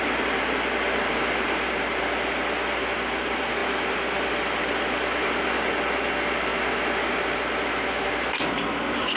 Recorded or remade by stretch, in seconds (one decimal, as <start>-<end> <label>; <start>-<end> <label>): 0.0-3.6 recorded; 3.6-5.8 remade; 5.8-9.2 recorded